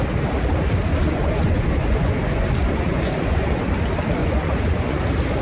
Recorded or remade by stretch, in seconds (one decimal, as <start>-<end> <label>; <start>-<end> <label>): 0.0-0.9 recorded; 0.9-3.6 remade; 3.6-4.2 recorded; 4.2-5.0 remade; 5.0-5.4 recorded